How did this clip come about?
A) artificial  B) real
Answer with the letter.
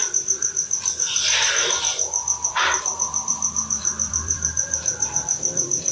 A